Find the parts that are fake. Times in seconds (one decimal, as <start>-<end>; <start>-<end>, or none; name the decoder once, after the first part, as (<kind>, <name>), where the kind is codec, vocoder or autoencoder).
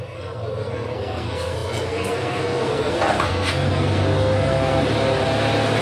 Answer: 0.0-4.8 (codec, SNAC)